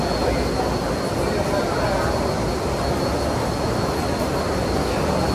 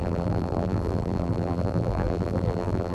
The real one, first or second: first